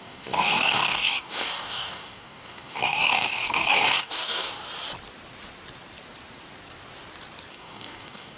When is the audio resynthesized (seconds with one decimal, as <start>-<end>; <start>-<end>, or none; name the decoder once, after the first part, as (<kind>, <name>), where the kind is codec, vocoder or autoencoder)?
0.0-4.6 (codec, DAC); 7.5-8.4